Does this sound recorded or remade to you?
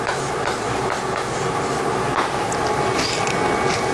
recorded